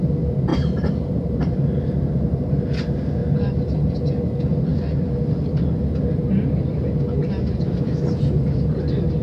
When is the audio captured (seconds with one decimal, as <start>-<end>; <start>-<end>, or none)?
0.0-0.5; 2.5-3.2; 3.9-9.2